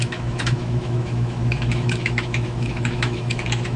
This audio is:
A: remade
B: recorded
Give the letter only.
A